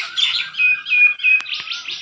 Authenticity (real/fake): real